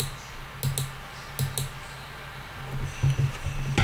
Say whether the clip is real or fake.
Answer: real